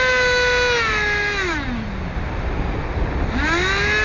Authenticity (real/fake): real